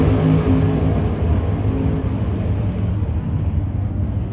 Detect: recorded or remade recorded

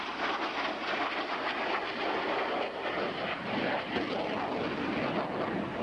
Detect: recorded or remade recorded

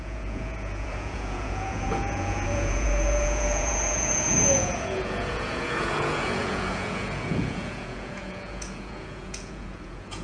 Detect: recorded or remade remade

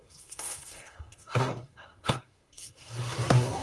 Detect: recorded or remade remade